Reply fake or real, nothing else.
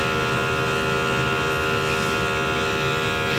real